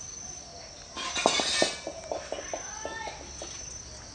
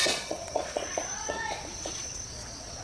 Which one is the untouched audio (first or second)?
first